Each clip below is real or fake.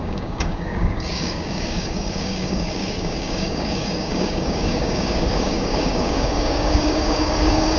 fake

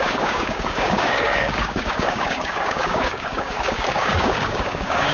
fake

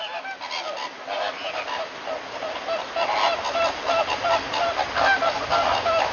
real